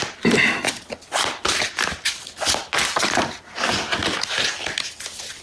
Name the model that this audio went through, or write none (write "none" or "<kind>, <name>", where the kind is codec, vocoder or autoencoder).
none